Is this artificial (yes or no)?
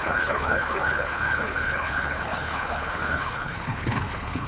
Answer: yes